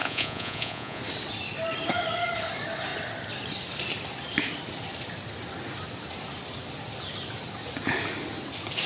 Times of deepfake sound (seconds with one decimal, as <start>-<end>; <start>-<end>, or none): 0.0-1.0